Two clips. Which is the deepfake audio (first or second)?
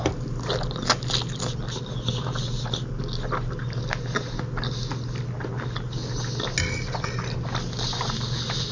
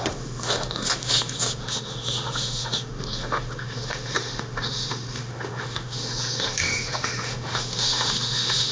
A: second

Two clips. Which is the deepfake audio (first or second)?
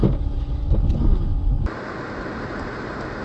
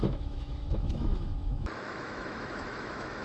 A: second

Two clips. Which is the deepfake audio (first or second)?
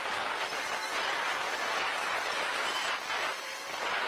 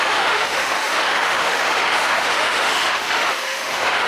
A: second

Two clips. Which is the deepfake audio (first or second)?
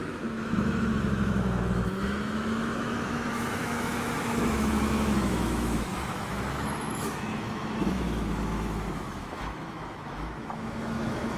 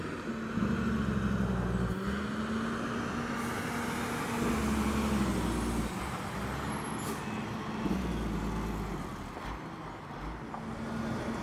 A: first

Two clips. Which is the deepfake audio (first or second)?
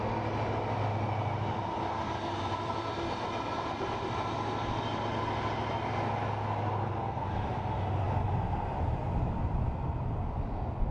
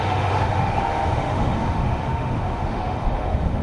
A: second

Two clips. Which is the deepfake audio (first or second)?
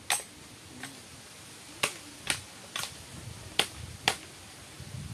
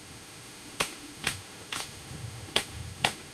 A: second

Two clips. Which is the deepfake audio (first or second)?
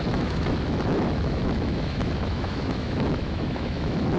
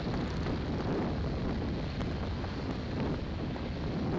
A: first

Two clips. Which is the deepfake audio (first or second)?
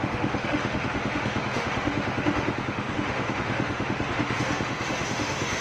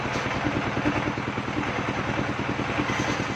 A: first